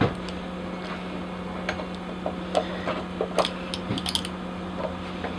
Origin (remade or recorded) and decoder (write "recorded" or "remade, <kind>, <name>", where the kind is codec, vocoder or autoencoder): recorded